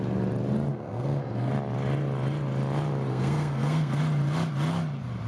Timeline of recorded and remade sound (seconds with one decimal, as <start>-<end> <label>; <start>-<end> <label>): 0.0-0.7 recorded; 0.7-1.5 remade; 1.5-3.1 recorded; 3.1-4.0 remade; 4.0-5.3 recorded